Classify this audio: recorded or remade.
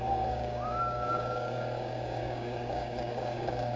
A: remade